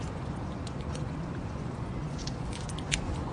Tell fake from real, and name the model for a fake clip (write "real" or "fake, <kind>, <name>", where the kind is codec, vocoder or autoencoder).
fake, vocoder, Vocos